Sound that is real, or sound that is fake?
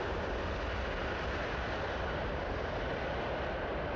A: real